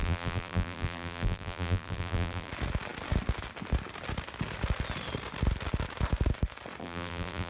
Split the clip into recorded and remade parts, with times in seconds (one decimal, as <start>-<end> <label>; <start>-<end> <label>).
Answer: 0.0-2.5 remade; 2.5-6.8 recorded; 6.8-7.5 remade

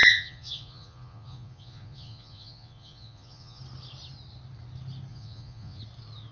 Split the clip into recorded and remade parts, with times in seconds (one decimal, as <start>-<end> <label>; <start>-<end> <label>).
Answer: 0.0-3.6 remade; 3.6-5.1 recorded; 5.1-5.8 remade; 5.8-6.3 recorded

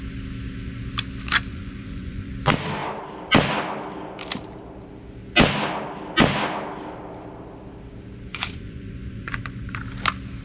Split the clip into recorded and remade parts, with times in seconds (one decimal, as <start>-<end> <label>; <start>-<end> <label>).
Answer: 0.0-1.5 recorded; 1.5-2.3 remade; 2.3-8.3 recorded; 8.3-9.8 remade; 9.8-10.4 recorded

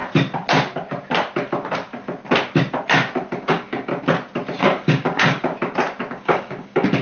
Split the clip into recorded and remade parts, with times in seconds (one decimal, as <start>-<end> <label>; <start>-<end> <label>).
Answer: 0.0-3.4 recorded; 3.4-3.9 remade; 3.9-4.6 recorded; 4.6-5.5 remade; 5.5-6.1 recorded; 6.1-7.0 remade

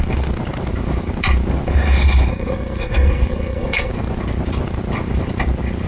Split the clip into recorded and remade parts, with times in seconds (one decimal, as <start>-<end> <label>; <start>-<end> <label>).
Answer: 0.0-2.3 recorded; 2.3-3.9 remade; 3.9-5.9 recorded

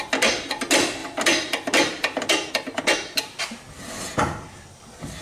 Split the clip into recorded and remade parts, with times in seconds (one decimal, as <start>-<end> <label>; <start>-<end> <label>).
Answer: 0.0-5.2 recorded

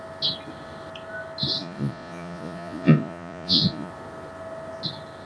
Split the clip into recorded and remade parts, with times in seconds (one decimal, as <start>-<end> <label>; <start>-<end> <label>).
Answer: 0.0-1.6 recorded; 1.6-3.9 remade; 3.9-5.3 recorded

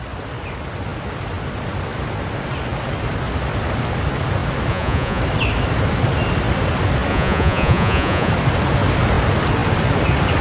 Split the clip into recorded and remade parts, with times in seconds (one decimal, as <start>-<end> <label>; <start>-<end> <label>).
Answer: 0.0-4.7 recorded; 4.7-5.2 remade; 5.2-7.1 recorded; 7.1-8.3 remade; 8.3-10.4 recorded